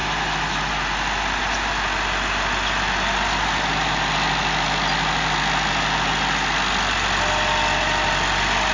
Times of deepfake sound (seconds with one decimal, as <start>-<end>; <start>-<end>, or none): none